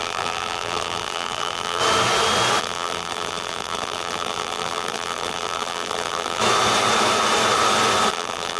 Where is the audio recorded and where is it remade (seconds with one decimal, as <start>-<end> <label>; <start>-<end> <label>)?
0.0-1.8 remade; 1.8-2.6 recorded; 2.6-6.4 remade; 6.4-8.1 recorded; 8.1-8.6 remade